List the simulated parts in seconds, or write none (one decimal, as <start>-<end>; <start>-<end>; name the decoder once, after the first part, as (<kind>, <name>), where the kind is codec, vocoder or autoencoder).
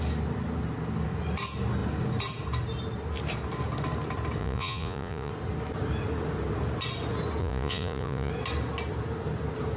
4.4-5.3 (vocoder, Vocos); 7.4-8.3